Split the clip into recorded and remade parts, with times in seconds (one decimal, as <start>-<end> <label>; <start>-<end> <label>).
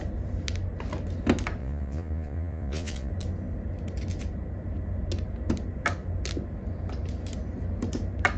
0.0-1.6 recorded; 1.6-3.1 remade; 3.1-8.4 recorded